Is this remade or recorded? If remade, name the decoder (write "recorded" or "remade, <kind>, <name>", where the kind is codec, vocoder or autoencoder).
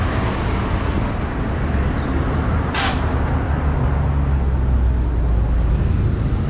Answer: recorded